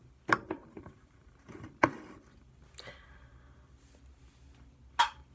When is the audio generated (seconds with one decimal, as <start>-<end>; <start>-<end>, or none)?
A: none

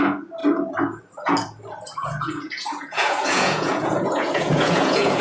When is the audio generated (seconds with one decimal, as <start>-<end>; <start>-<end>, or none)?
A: 2.0-5.2

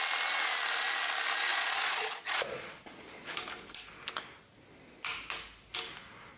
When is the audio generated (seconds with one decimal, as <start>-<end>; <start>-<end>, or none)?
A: 1.5-3.3

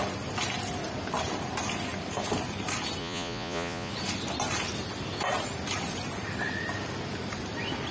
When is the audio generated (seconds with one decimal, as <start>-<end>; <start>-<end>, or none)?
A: 3.0-3.9

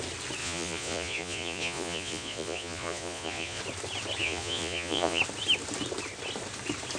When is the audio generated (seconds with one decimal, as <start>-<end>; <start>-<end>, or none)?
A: 0.4-3.6; 4.2-5.2

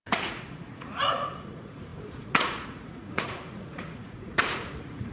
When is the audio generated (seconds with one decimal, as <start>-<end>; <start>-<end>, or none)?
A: 0.0-5.1

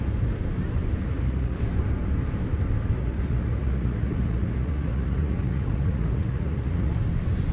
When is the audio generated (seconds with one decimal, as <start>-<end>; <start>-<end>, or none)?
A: 1.0-1.6; 3.0-6.9

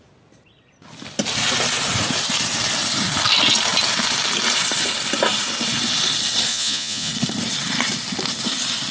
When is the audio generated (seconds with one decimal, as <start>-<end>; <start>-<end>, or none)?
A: 6.5-7.1